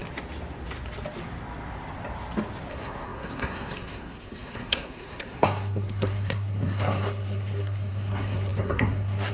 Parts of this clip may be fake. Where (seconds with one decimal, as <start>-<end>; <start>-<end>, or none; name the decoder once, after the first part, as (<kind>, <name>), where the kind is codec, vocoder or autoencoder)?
2.7-9.3 (codec, SNAC)